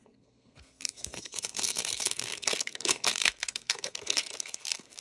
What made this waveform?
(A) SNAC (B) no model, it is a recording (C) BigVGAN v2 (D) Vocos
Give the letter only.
A